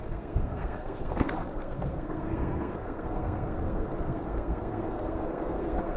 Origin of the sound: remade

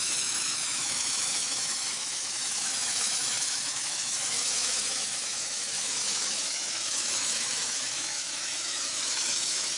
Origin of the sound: remade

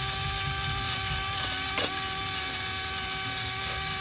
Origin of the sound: recorded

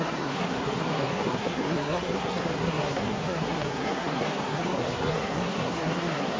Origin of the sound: remade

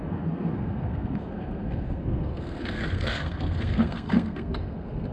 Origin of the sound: remade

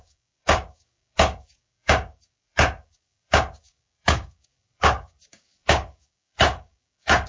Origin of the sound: remade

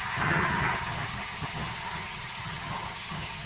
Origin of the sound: remade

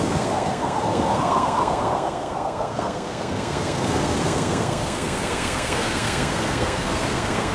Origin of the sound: remade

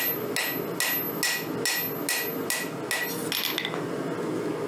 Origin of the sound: recorded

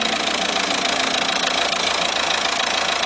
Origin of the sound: recorded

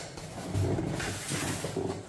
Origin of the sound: recorded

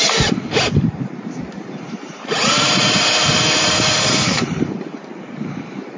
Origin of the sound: remade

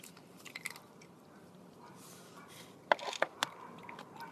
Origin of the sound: recorded